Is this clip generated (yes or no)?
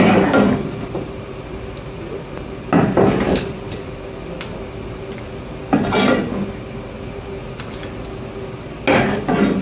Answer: no